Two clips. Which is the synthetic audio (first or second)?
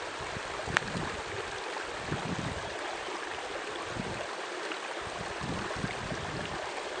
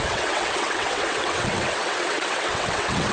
second